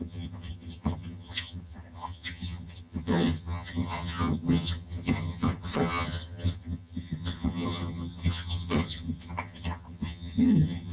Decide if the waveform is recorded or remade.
remade